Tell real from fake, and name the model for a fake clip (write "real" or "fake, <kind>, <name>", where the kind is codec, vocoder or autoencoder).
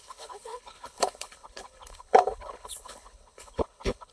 fake, codec, HILCodec